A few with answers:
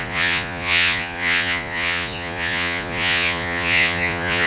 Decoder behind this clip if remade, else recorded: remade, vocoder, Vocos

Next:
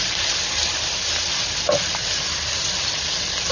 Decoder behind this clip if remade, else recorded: recorded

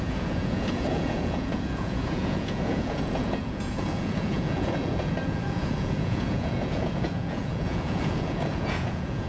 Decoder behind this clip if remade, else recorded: remade, vocoder, Vocos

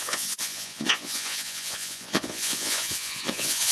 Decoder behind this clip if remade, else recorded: remade, vocoder, Vocos